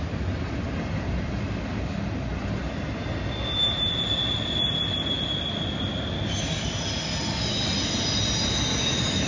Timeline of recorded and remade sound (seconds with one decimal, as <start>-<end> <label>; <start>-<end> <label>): 0.0-9.3 recorded